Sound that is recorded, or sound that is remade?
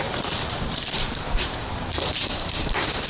remade